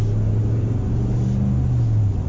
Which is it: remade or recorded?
recorded